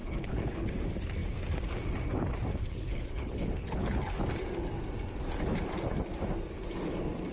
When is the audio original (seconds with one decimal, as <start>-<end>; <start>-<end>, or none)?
0.7-2.6; 4.2-7.3